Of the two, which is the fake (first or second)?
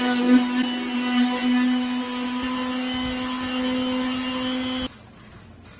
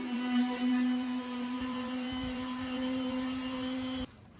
second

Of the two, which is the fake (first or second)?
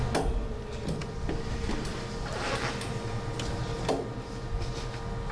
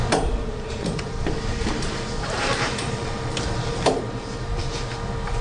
second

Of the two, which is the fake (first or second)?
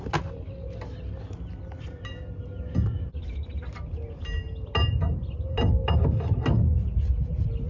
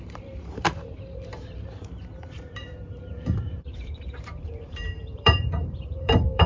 second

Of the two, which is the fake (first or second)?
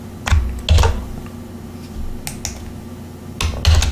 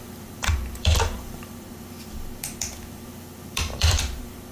second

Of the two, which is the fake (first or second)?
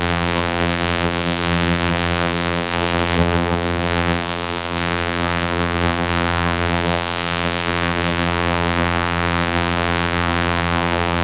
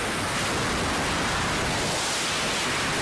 first